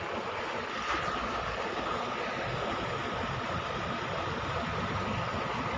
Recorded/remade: recorded